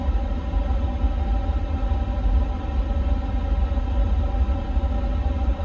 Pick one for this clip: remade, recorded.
recorded